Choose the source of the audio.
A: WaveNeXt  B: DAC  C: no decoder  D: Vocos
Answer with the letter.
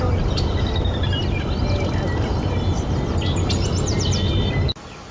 C